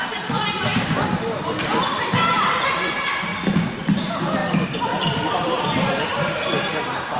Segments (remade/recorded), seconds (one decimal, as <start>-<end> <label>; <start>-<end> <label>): 0.0-0.7 remade; 0.7-2.3 recorded; 2.3-7.2 remade